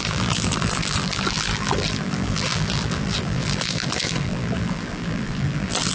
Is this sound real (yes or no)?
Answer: no